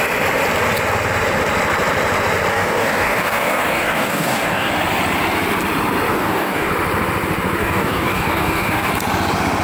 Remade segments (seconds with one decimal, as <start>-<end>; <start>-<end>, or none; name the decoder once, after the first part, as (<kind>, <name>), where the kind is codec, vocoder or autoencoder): 2.5-4.7 (codec, DAC); 6.1-6.7; 7.6-8.9